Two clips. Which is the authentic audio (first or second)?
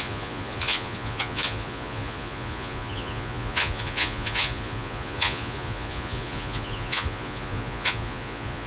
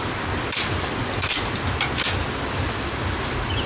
second